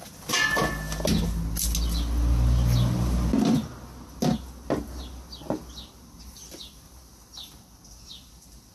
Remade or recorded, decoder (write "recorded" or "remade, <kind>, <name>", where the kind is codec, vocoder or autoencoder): recorded